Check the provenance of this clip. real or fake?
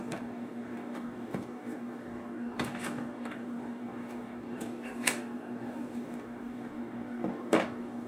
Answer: fake